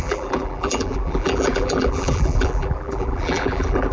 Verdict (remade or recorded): remade